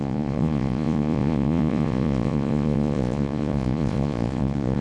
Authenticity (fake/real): fake